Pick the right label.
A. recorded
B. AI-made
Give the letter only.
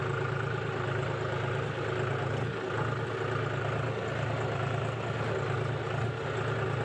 A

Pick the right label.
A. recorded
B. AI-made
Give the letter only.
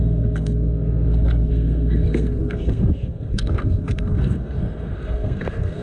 B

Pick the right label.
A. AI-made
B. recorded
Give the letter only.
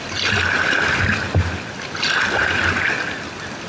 B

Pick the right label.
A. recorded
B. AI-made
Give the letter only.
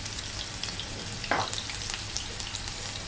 A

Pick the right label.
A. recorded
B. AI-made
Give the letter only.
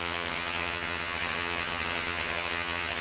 B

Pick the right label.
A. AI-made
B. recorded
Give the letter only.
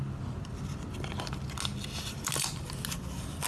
B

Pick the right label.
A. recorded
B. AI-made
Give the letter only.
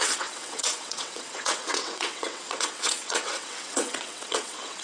B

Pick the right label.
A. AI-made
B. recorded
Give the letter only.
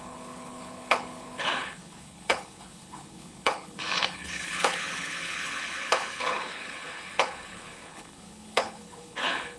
A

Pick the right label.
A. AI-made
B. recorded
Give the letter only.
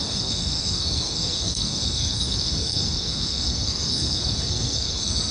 A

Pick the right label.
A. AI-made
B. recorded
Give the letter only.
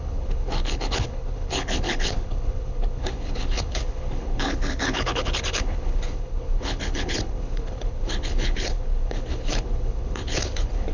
A